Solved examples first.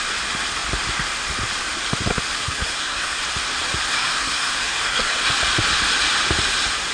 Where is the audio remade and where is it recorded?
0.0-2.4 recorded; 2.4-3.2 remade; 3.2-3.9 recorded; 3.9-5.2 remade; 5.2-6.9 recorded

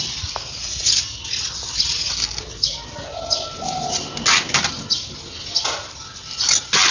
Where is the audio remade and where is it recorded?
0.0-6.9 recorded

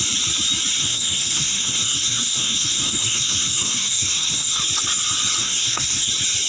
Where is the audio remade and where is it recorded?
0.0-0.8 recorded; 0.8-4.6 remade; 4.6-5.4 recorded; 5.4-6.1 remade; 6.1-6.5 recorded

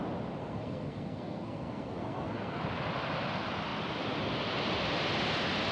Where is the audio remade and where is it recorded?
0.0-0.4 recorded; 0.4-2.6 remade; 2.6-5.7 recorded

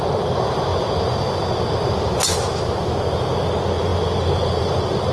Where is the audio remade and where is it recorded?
0.0-5.1 recorded